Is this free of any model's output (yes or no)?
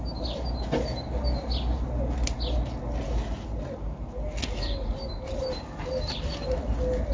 yes